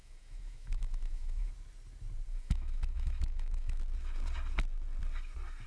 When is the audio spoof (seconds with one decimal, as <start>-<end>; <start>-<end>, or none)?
0.0-1.5; 2.3-3.8